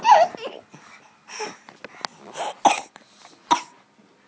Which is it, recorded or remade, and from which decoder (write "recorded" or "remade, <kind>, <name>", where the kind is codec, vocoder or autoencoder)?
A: recorded